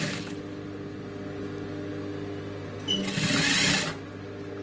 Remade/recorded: recorded